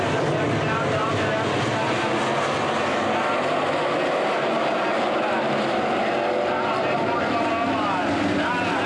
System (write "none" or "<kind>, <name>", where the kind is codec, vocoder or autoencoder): none